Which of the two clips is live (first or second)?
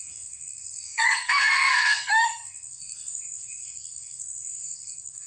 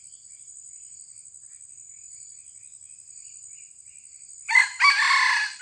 second